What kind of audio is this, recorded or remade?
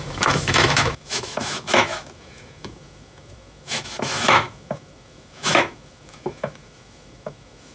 remade